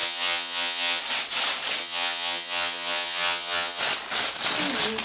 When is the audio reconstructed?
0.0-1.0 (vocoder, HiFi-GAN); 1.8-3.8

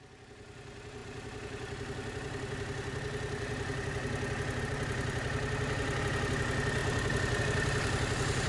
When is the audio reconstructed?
none

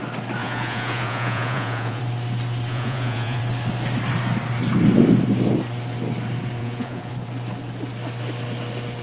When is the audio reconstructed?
0.4-2.0 (vocoder, Vocos); 2.7-3.4; 6.6-7.1

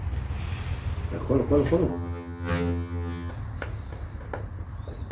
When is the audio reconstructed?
1.9-3.3 (vocoder, HiFi-GAN)

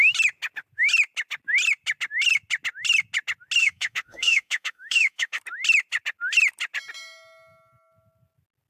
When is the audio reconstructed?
3.6-5.4 (autoencoder, DAC-VAE)

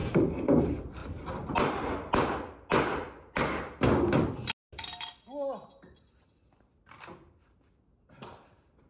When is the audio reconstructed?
none

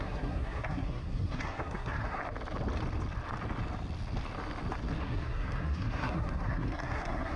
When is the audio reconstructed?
0.0-2.2 (codec, SNAC); 5.0-7.4

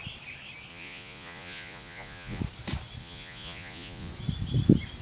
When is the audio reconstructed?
0.7-2.4 (vocoder, Vocos); 3.0-4.1